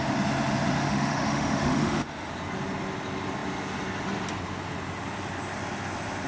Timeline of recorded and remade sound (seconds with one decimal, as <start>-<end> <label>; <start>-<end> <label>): 0.0-0.8 recorded; 0.8-2.3 remade; 2.3-6.3 recorded

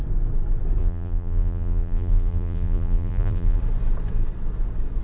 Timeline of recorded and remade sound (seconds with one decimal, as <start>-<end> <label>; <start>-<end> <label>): 0.0-0.8 recorded; 0.8-3.6 remade; 3.6-5.0 recorded

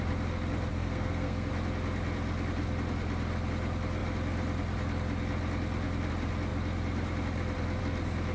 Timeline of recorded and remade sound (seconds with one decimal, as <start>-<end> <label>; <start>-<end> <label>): 0.0-0.7 recorded; 0.7-1.5 remade; 1.5-8.3 recorded

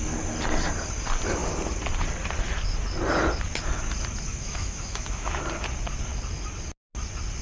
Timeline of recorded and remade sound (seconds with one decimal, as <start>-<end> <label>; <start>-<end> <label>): 0.0-4.3 recorded; 4.3-5.4 remade; 5.4-7.4 recorded